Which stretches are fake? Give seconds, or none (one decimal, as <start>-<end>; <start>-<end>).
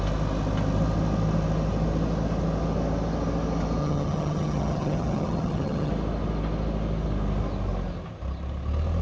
3.8-5.9